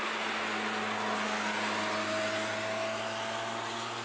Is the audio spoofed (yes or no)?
no